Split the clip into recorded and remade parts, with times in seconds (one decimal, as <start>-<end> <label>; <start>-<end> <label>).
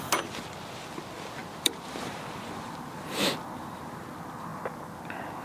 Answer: 0.0-1.4 recorded; 1.4-3.8 remade; 3.8-5.4 recorded